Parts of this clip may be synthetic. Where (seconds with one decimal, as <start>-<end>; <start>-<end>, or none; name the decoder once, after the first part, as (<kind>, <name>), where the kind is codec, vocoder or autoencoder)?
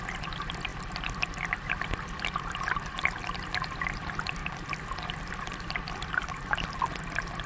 none